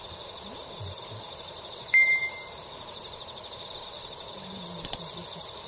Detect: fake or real fake